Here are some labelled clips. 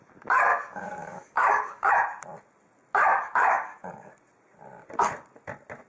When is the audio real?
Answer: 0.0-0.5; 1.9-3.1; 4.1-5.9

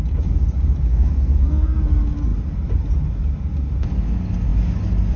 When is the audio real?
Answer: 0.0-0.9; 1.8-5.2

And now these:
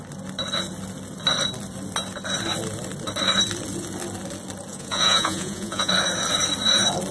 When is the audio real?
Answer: 0.0-4.7; 5.9-7.1